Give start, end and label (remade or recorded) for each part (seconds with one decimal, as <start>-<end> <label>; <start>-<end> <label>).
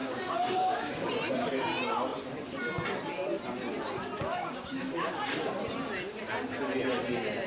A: 0.0-1.1 remade; 1.1-4.3 recorded; 4.3-5.1 remade; 5.1-7.5 recorded